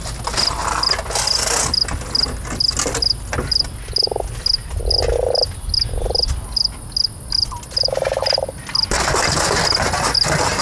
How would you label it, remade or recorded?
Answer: recorded